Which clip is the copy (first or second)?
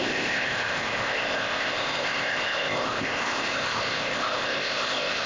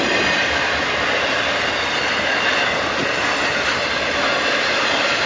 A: first